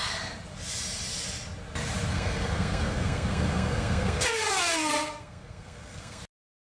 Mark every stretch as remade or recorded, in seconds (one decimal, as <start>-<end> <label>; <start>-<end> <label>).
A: 0.0-2.1 recorded; 2.1-6.2 remade; 6.2-6.8 recorded